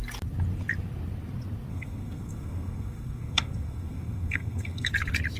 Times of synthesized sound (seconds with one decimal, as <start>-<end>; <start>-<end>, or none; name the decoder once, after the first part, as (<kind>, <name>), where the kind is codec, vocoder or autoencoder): 1.7-4.9 (codec, SNAC)